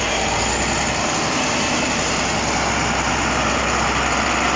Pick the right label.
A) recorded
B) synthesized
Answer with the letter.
A